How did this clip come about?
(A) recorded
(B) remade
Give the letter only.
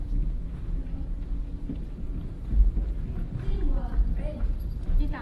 A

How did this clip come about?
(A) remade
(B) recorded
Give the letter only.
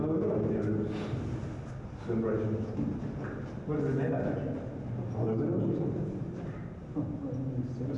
B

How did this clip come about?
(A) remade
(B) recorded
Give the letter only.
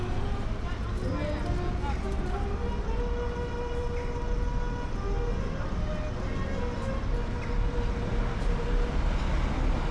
B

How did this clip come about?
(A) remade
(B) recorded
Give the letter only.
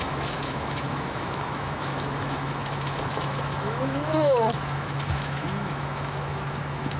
A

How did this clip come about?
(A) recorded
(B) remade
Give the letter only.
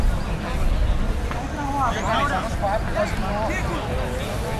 A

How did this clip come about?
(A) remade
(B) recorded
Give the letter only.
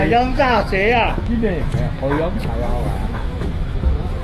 A